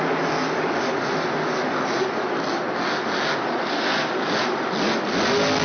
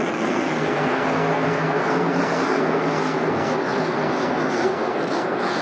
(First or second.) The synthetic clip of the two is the second